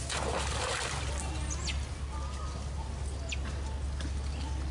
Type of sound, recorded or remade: recorded